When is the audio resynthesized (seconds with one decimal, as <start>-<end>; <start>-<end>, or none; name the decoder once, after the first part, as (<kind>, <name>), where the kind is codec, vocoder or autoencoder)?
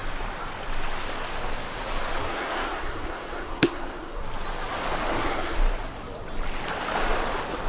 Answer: 2.2-4.2 (codec, SNAC); 5.1-5.6